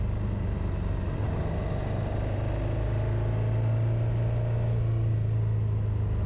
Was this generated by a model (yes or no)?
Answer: no